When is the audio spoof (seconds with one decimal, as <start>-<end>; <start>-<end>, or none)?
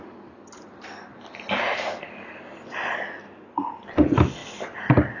none